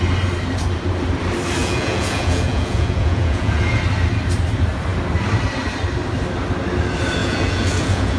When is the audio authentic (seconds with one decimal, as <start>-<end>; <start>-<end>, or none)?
0.0-1.6; 3.8-7.2